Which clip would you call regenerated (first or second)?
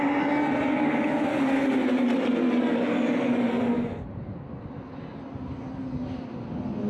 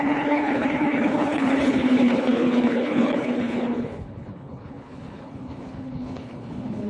second